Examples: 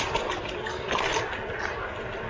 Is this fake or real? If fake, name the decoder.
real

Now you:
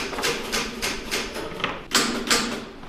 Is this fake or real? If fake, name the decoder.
real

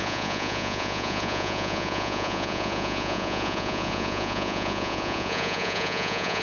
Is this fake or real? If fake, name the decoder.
fake, vocoder, Vocos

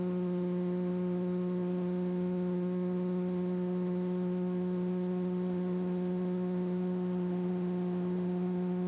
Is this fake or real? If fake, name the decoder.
fake, autoencoder, DAC-VAE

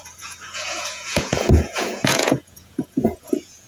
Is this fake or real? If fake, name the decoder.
fake, vocoder, Vocos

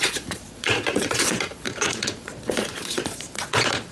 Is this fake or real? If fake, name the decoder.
fake, vocoder, Vocos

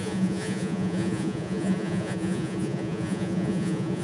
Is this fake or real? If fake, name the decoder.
fake, vocoder, Vocos